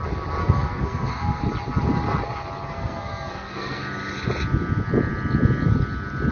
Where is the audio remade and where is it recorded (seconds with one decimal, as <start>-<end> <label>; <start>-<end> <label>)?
0.0-0.4 recorded; 0.4-1.4 remade; 1.4-2.7 recorded; 2.7-3.8 remade; 3.8-6.3 recorded